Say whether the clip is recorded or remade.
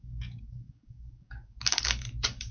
remade